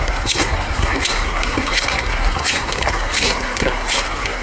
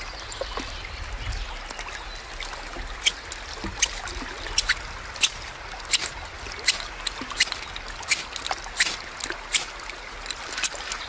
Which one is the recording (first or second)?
second